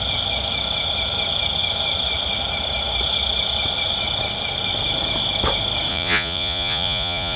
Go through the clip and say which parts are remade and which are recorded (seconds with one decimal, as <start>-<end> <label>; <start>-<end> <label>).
0.0-5.9 recorded; 5.9-7.4 remade

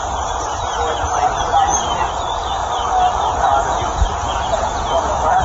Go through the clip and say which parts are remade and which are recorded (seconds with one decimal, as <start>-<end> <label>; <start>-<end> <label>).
0.0-1.7 remade; 1.7-2.2 recorded; 2.2-2.6 remade; 2.6-3.1 recorded; 3.1-5.4 remade

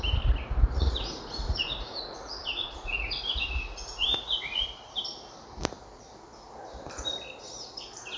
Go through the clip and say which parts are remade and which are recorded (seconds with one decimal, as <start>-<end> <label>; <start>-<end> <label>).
0.0-0.7 recorded; 0.7-4.8 remade; 4.8-8.2 recorded

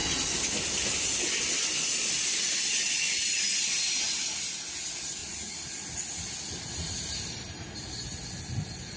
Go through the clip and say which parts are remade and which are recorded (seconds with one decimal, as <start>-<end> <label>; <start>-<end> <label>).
0.0-5.2 recorded; 5.2-5.7 remade; 5.7-9.0 recorded

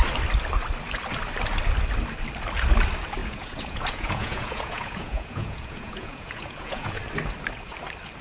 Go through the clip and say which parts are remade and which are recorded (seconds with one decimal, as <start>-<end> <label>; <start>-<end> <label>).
0.0-3.2 recorded; 3.2-7.0 remade; 7.0-8.2 recorded

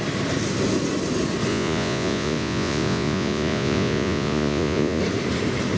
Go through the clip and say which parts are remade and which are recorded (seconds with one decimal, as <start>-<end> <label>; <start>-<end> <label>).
0.0-1.5 recorded; 1.5-5.0 remade; 5.0-5.8 recorded